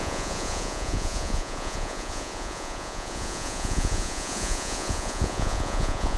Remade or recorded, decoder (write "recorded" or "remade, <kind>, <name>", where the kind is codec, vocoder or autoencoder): remade, vocoder, Vocos